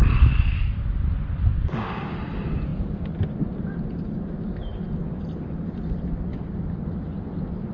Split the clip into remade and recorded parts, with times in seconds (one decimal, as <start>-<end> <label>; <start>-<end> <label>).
0.0-1.5 recorded; 1.5-2.2 remade; 2.2-7.7 recorded